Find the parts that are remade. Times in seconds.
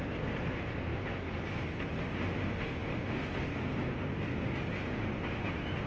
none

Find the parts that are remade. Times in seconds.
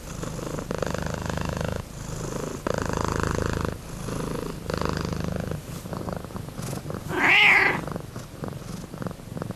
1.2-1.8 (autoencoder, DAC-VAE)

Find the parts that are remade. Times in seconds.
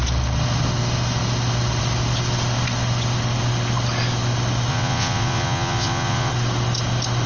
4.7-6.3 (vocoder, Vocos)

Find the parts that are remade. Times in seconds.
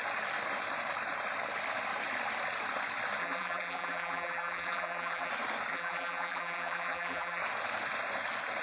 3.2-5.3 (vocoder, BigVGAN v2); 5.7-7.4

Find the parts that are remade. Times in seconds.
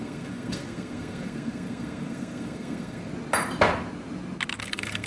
0.0-3.1 (codec, SNAC); 4.6-5.1